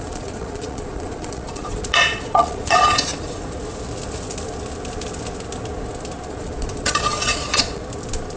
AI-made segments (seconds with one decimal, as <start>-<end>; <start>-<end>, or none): 0.0-3.1; 6.3-7.8